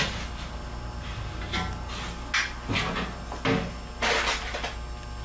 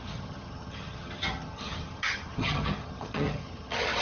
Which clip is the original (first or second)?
first